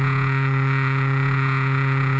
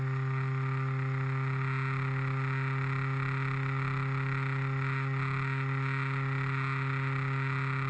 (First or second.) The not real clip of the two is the first